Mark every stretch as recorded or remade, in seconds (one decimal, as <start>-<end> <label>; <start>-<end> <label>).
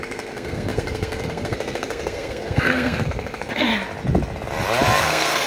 0.0-3.7 remade; 3.7-5.0 recorded; 5.0-5.5 remade